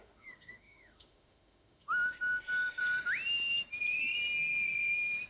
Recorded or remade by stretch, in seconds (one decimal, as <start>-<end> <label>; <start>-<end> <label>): 0.0-2.8 remade; 2.8-5.3 recorded